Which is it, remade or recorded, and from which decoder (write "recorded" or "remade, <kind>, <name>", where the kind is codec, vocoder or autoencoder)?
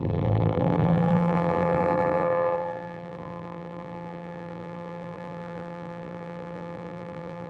remade, vocoder, BigVGAN v2